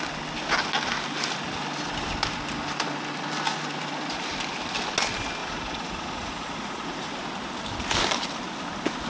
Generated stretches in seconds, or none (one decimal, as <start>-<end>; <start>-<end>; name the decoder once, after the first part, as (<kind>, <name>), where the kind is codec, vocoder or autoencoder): 5.4-7.1 (vocoder, Vocos)